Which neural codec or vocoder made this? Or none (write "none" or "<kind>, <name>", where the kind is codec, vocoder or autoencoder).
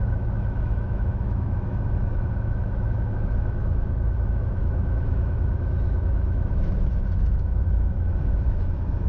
autoencoder, DAC-VAE